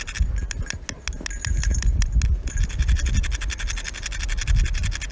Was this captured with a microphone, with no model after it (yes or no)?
yes